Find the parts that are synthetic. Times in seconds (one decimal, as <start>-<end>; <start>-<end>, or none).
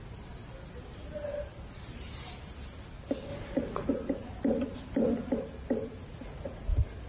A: 3.3-3.9; 6.1-6.6